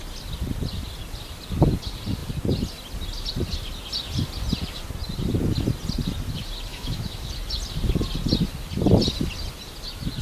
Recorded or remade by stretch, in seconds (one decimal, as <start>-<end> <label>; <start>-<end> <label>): 0.0-6.7 recorded; 6.7-7.3 remade; 7.3-10.2 recorded